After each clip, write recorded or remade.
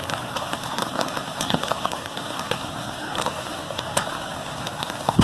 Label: remade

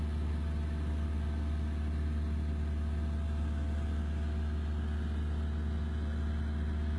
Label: recorded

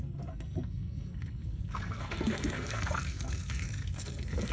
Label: remade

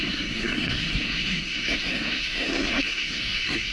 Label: remade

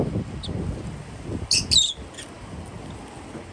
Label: recorded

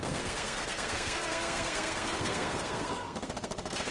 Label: remade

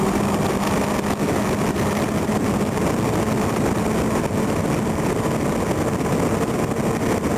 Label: recorded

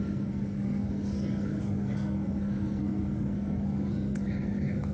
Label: remade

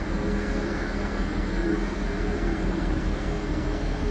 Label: remade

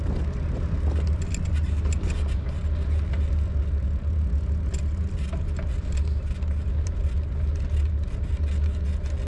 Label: recorded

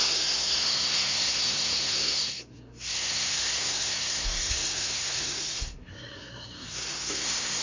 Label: remade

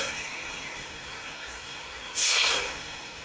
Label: remade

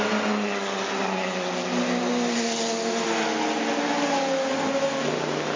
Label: recorded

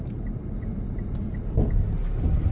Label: recorded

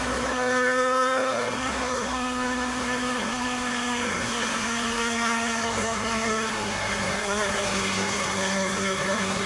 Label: remade